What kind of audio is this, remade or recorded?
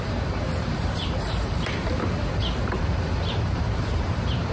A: remade